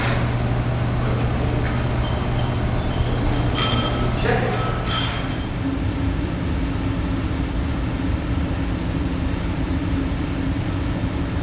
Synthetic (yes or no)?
no